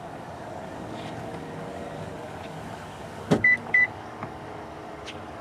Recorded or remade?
remade